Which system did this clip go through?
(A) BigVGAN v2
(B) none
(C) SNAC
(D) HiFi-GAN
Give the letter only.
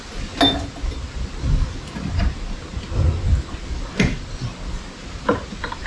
B